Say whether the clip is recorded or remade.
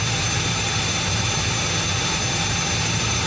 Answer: remade